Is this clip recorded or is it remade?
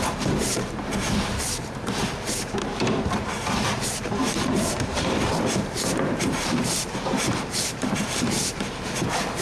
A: remade